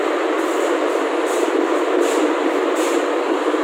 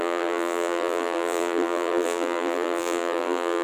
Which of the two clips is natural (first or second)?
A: first